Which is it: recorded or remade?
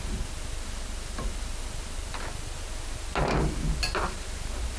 recorded